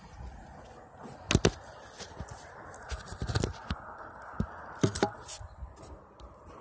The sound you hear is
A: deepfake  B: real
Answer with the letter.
B